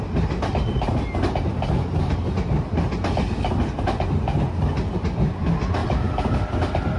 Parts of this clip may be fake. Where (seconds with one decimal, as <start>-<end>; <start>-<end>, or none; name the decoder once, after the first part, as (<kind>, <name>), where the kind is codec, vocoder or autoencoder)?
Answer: none